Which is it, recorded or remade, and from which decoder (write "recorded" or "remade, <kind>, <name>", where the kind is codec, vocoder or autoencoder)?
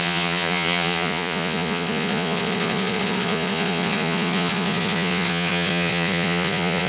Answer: remade, vocoder, Vocos